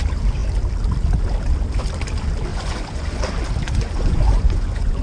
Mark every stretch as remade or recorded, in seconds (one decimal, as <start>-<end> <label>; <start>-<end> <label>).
0.0-2.5 recorded; 2.5-3.2 remade; 3.2-3.6 recorded; 3.6-5.0 remade

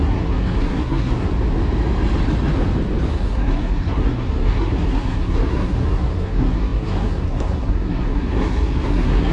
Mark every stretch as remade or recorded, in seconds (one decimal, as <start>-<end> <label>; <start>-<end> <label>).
0.0-1.3 remade; 1.3-3.1 recorded; 3.1-9.3 remade

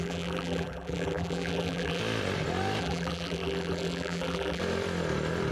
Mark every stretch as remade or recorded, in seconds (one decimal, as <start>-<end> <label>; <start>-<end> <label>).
0.0-2.0 remade; 2.0-2.8 recorded; 2.8-4.6 remade; 4.6-5.5 recorded

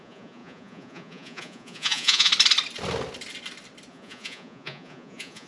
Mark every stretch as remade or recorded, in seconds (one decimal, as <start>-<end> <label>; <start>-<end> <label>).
0.0-2.3 remade; 2.3-3.9 recorded; 3.9-5.5 remade